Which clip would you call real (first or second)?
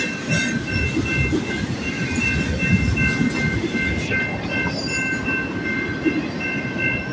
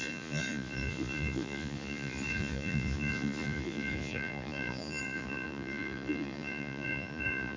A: first